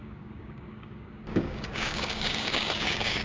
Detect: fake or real fake